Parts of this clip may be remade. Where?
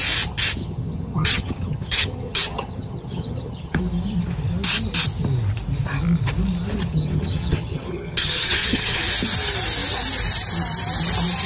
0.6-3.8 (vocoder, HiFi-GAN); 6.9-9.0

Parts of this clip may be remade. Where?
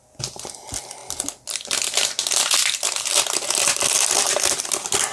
none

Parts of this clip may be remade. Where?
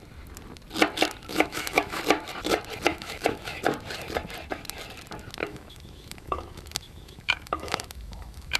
1.3-2.0 (autoencoder, DAC-VAE); 2.9-3.6; 5.4-8.6